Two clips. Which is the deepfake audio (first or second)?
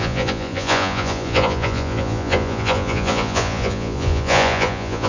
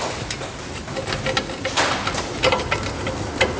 first